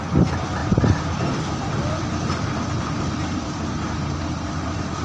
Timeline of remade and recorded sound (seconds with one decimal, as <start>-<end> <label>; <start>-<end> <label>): 0.0-0.6 recorded; 0.6-3.6 remade; 3.6-5.0 recorded